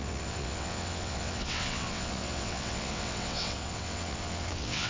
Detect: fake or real fake